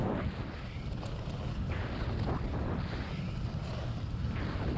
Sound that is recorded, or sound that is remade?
recorded